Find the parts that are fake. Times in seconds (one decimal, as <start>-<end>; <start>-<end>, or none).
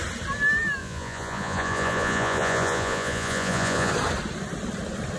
0.8-3.9